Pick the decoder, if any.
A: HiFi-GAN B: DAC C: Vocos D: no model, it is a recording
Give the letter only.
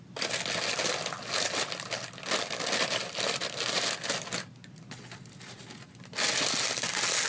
D